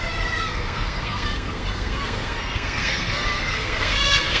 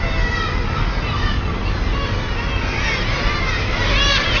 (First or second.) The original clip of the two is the second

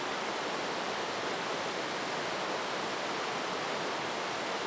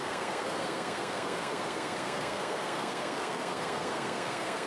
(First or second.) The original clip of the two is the first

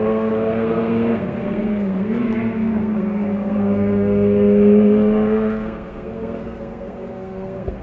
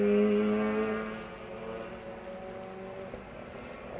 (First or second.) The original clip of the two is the second